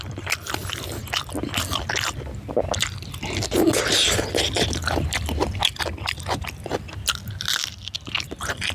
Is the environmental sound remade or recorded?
recorded